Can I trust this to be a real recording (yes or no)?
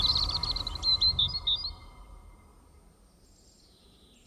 yes